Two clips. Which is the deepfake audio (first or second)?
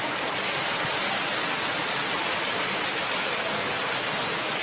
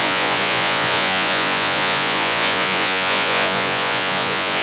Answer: second